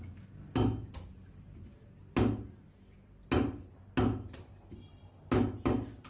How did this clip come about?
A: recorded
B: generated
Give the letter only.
A